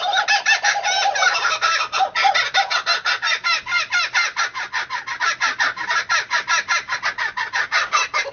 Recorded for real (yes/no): yes